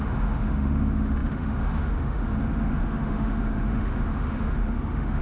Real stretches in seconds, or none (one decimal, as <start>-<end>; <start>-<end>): none